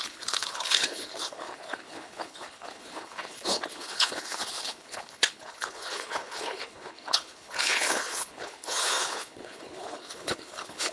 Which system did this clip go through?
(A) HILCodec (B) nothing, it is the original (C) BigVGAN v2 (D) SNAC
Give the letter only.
A